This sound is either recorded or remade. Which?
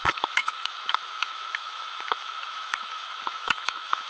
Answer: remade